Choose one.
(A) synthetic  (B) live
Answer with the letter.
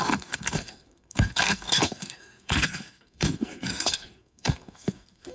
A